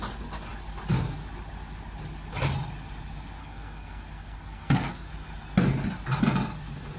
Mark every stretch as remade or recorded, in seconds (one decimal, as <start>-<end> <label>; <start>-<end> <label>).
0.0-3.4 recorded; 3.4-5.1 remade; 5.1-7.0 recorded